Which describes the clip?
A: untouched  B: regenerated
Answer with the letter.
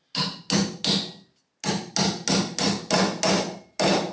A